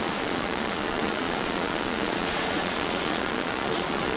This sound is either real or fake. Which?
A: fake